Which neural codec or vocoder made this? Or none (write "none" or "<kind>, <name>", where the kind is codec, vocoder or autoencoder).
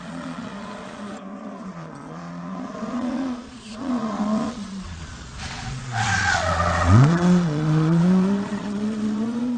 vocoder, Vocos